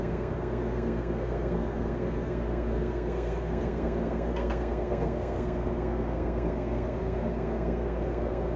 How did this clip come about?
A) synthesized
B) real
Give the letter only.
A